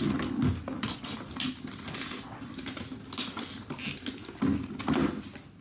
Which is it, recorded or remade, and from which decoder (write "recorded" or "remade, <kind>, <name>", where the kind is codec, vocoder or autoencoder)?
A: recorded